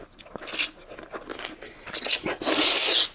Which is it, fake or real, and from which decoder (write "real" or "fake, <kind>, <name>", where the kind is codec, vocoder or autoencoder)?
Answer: real